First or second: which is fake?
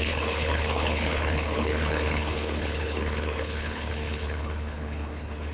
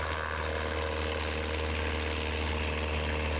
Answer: first